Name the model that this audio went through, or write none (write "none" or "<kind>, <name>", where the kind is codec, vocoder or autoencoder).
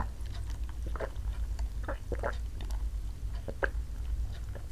none